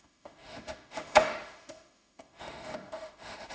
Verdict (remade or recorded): remade